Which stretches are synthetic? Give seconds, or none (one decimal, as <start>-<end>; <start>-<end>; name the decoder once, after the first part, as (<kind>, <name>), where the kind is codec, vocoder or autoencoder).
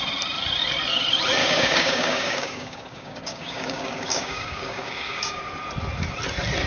1.4-5.4 (codec, DAC)